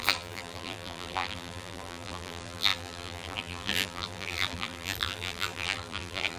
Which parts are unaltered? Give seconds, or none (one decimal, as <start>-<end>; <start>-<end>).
none